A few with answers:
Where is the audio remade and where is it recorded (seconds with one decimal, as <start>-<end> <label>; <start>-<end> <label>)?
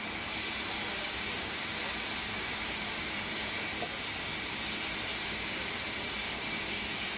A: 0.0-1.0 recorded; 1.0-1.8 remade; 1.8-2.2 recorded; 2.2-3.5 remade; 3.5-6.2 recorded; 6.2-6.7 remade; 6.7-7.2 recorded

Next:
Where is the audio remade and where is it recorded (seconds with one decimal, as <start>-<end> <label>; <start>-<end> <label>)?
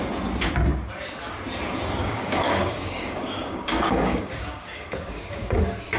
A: 0.0-2.0 recorded; 2.0-5.6 remade; 5.6-6.0 recorded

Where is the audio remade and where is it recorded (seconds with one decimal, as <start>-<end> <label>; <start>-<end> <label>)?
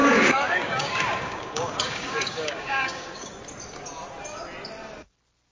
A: 0.0-3.3 remade; 3.3-5.5 recorded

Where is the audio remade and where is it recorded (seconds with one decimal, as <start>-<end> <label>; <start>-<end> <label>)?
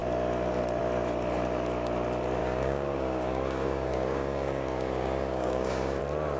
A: 0.0-2.4 recorded; 2.4-6.0 remade; 6.0-6.4 recorded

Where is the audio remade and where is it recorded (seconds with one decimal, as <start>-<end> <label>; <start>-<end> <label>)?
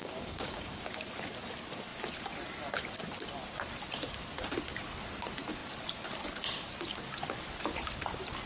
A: 0.0-0.8 remade; 0.8-8.5 recorded